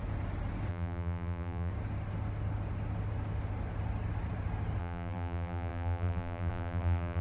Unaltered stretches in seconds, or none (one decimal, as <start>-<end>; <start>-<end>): 0.0-0.7; 1.7-4.8